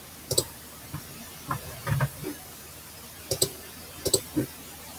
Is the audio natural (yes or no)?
no